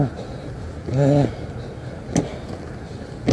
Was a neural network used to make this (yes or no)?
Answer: no